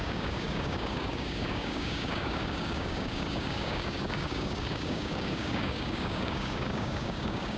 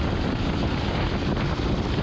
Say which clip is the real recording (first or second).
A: second